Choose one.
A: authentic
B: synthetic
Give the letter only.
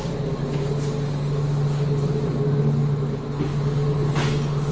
A